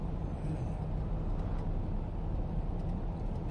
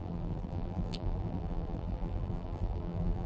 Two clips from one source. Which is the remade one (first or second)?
second